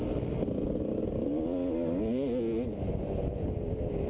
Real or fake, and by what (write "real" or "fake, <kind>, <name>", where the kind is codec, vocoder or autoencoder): real